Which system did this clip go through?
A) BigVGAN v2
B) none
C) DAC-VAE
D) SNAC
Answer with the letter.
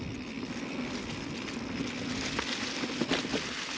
B